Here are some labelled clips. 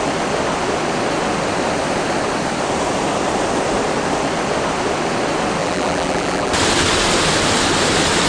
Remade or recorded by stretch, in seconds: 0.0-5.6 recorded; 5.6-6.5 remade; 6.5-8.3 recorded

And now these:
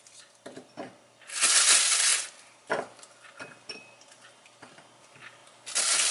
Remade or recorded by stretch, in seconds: 0.0-2.1 remade; 2.1-5.0 recorded; 5.0-6.1 remade

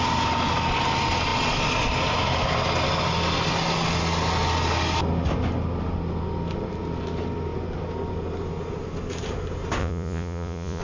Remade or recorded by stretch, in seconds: 0.0-9.8 recorded; 9.8-10.8 remade

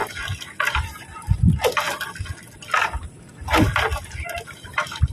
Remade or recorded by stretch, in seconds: 0.0-5.1 recorded

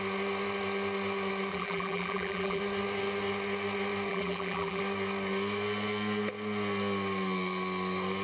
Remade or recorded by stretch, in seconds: 0.0-1.5 recorded; 1.5-2.6 remade; 2.6-4.1 recorded; 4.1-4.8 remade; 4.8-8.2 recorded

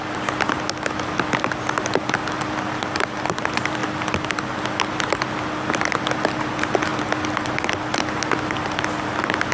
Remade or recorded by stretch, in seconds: 0.0-9.5 recorded

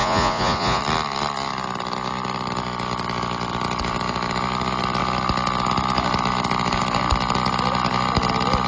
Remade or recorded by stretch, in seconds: 0.0-0.8 remade; 0.8-8.7 recorded